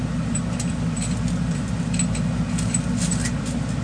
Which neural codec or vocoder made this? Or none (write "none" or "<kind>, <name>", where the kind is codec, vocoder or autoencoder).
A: none